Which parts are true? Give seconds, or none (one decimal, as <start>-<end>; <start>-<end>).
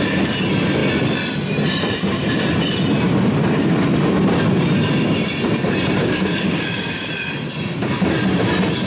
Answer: 0.0-6.0; 7.1-8.9